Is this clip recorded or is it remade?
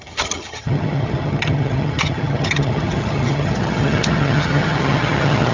remade